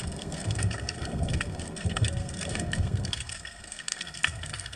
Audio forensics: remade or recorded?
remade